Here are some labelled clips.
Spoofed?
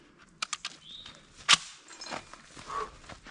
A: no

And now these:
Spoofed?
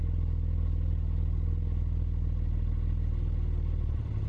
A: no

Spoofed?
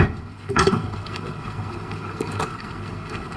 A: yes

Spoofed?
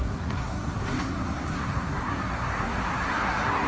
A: yes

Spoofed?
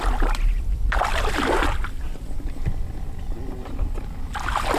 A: no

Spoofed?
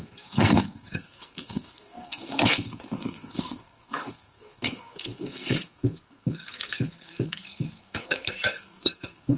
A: yes